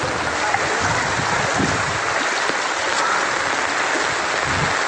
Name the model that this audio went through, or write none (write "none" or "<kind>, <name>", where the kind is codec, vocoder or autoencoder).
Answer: none